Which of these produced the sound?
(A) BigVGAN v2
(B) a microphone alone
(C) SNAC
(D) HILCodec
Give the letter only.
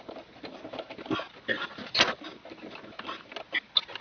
B